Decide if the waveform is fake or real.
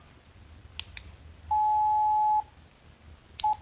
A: real